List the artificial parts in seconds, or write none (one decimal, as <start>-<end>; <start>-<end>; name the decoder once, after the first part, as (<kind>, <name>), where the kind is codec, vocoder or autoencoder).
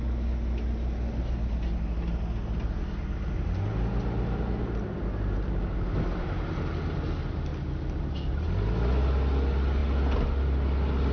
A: none